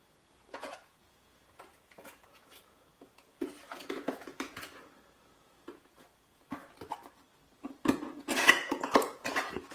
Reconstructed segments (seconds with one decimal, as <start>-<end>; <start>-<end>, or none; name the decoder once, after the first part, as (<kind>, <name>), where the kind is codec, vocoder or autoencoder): 0.0-6.6 (vocoder, Vocos); 7.6-9.7